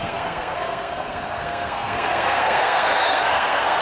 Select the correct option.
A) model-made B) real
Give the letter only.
A